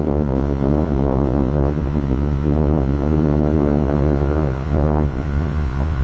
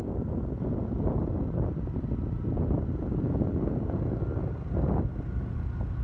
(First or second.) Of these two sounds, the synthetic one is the first